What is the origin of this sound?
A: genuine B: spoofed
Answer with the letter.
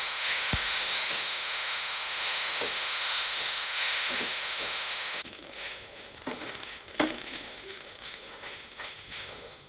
B